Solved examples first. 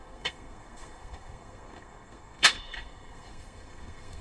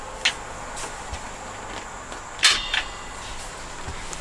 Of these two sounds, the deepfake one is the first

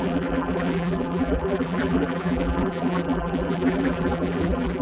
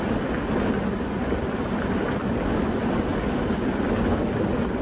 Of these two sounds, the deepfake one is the first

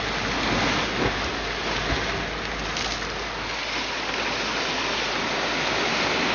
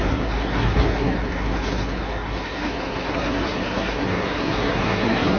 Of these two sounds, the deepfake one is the second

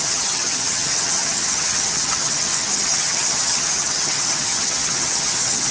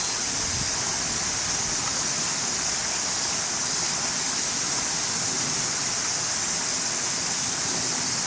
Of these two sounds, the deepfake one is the first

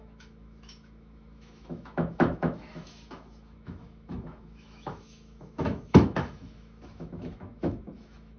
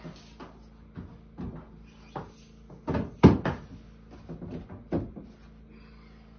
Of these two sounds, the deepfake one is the first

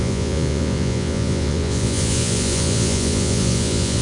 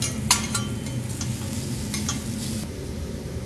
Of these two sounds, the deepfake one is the first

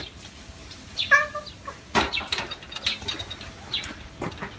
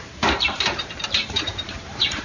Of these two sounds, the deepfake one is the second